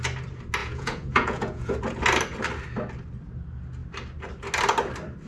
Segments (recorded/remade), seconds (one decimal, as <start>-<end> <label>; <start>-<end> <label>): 0.0-0.6 recorded; 0.6-1.7 remade; 1.7-5.3 recorded